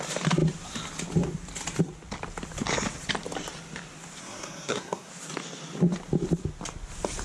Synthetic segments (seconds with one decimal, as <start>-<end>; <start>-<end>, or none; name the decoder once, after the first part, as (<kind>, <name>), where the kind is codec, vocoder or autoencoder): 4.2-5.1 (codec, SNAC)